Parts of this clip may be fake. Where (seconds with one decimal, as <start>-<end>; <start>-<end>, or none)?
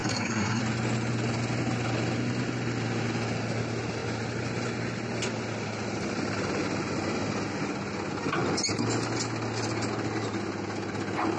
0.0-0.6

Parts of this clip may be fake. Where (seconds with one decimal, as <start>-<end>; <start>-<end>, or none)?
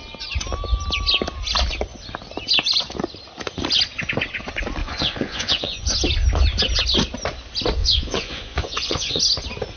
4.8-5.9; 7.8-9.2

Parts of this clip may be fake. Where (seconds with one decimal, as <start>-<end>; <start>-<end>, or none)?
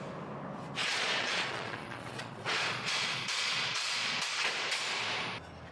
0.8-4.2